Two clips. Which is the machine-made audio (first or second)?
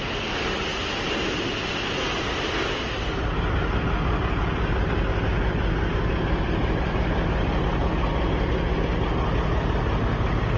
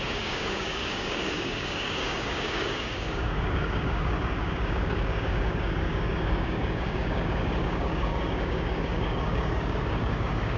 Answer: second